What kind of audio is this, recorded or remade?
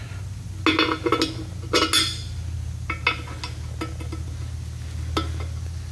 recorded